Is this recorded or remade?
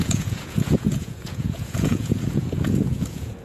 remade